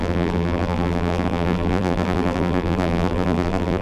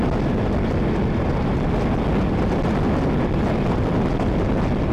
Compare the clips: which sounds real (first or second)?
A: second